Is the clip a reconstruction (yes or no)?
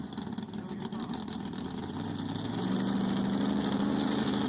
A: no